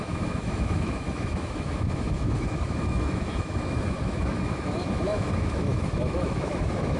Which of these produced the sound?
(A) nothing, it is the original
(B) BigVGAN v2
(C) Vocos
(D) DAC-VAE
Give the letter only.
D